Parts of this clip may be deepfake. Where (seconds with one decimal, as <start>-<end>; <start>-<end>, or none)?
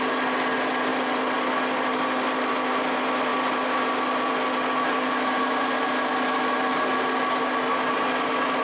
none